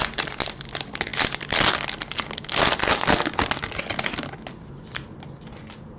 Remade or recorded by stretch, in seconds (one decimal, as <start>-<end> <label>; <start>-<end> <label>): 0.0-6.0 recorded